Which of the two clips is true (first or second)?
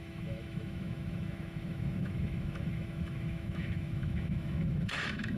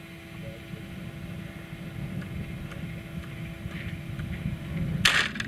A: second